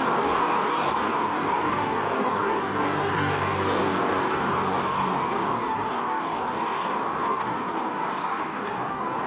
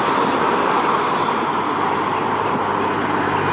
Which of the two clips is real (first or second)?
second